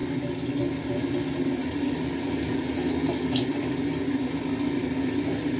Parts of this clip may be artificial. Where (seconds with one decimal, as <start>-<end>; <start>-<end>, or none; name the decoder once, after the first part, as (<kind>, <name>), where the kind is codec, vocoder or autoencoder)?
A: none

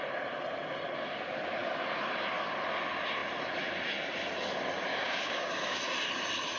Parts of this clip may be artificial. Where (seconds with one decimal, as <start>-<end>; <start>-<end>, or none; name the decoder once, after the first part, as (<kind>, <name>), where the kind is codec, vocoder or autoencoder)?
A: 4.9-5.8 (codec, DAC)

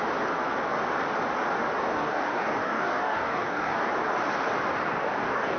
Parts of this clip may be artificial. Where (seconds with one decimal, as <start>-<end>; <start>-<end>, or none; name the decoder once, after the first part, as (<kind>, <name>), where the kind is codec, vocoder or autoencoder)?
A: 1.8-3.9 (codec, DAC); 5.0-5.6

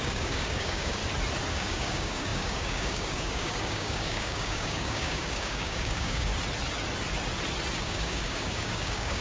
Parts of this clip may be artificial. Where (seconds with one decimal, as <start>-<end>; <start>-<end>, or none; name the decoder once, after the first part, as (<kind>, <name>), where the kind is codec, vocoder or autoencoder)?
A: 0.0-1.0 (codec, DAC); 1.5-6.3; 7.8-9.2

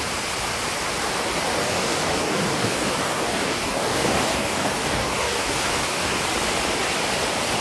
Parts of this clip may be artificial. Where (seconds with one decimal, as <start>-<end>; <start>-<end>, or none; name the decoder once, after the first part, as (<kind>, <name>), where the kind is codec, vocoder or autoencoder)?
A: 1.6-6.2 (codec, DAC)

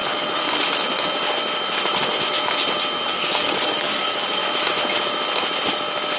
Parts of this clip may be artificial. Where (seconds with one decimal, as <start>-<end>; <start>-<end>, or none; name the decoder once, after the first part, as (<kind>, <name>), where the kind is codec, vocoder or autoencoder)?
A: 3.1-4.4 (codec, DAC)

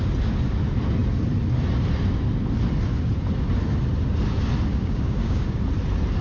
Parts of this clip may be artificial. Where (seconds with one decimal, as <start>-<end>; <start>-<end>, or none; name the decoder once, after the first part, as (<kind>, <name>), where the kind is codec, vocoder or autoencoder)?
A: 4.7-5.6 (codec, DAC)